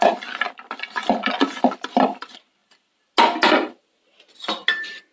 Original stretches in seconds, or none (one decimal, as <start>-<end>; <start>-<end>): 0.0-5.1